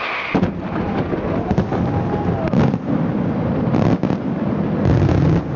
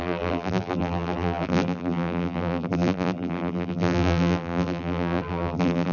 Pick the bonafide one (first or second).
first